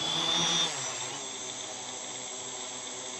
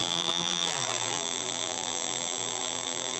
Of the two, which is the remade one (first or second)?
second